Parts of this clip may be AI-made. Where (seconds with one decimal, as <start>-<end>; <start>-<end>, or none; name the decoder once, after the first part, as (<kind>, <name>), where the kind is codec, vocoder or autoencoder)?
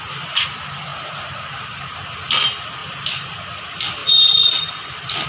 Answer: 0.0-2.8 (vocoder, BigVGAN v2); 3.6-4.0; 4.6-5.3